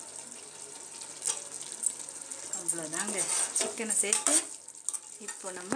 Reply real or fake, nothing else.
real